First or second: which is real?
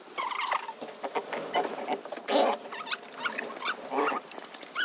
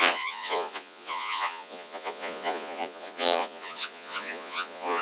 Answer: first